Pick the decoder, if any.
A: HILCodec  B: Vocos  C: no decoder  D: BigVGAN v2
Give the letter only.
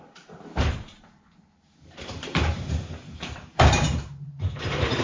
D